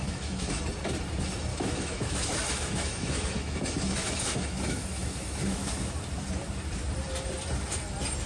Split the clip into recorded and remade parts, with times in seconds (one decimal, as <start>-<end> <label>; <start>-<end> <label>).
0.0-0.6 remade; 0.6-1.5 recorded; 1.5-5.9 remade; 5.9-8.3 recorded